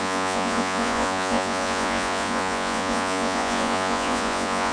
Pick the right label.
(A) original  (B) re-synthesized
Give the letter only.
B